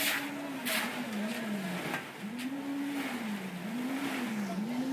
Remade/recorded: recorded